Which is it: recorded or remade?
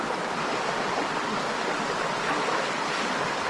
recorded